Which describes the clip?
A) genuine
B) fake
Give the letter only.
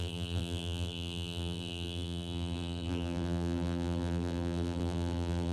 B